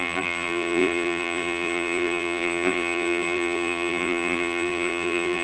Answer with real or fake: fake